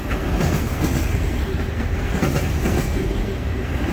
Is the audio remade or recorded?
remade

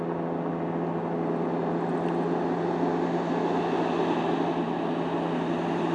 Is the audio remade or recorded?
recorded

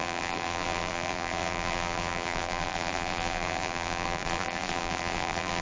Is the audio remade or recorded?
remade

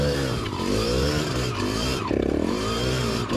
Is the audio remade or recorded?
remade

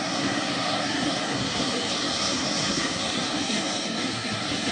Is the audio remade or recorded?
remade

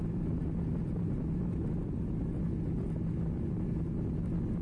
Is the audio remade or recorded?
recorded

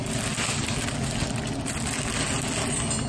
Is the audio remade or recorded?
recorded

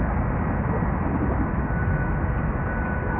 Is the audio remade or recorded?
recorded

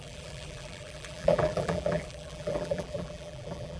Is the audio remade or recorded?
remade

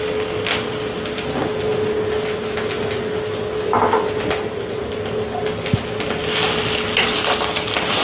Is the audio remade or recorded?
recorded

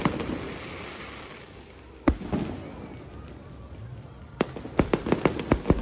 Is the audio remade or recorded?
recorded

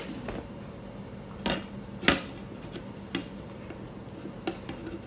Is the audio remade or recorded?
recorded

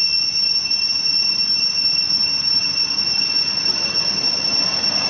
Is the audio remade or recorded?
recorded